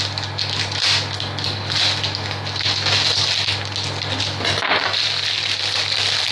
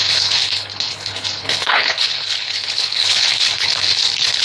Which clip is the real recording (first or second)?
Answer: first